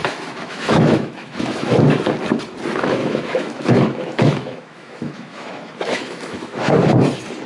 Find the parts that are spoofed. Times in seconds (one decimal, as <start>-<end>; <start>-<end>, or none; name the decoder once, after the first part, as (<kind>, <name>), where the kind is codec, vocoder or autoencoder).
0.0-1.8 (autoencoder, DAC-VAE); 3.0-6.7